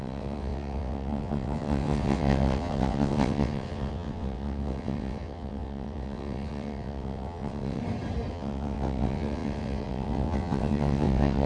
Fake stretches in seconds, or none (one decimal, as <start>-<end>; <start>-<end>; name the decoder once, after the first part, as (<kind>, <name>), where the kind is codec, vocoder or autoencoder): 0.0-7.8 (vocoder, WaveNeXt); 8.3-11.5